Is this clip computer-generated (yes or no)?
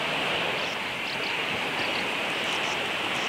no